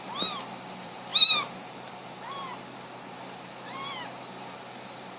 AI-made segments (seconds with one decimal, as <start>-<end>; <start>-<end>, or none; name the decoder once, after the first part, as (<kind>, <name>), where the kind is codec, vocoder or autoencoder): 0.0-1.1 (vocoder, BigVGAN v2); 4.2-5.2